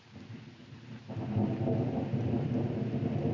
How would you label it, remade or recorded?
recorded